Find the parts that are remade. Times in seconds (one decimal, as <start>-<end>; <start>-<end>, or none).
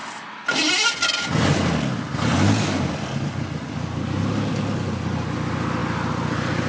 0.0-0.9; 5.8-6.7